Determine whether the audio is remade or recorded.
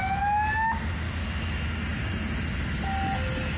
recorded